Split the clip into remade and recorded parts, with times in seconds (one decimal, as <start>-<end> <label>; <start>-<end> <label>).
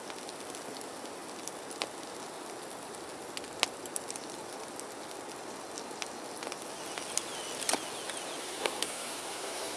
0.0-8.4 recorded; 8.4-9.8 remade